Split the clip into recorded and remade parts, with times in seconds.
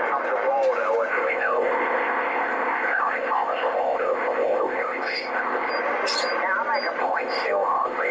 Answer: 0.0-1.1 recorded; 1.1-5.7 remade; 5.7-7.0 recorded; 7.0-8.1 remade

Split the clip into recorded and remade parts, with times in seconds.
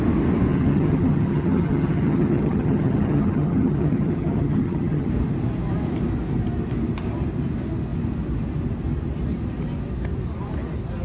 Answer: 0.0-0.5 recorded; 0.5-5.1 remade; 5.1-11.0 recorded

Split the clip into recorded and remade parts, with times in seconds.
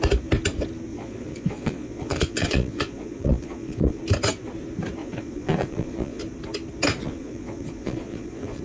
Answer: 0.0-0.9 recorded; 0.9-4.0 remade; 4.0-5.0 recorded; 5.0-6.2 remade; 6.2-7.0 recorded; 7.0-8.6 remade